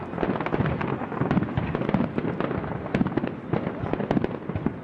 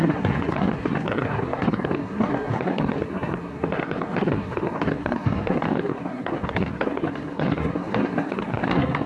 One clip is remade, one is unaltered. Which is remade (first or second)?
second